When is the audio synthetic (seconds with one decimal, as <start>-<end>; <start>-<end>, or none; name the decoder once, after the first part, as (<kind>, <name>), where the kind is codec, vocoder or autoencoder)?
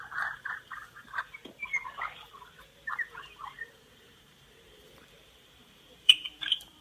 0.0-1.4 (vocoder, BigVGAN v2); 2.9-6.8